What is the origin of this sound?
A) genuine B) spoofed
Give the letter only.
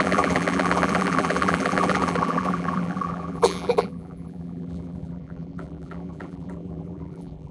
B